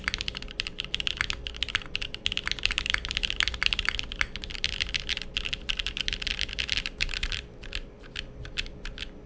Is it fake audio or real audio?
real